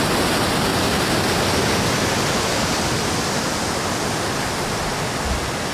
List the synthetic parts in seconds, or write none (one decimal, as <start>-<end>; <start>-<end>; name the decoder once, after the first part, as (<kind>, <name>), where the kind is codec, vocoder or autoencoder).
none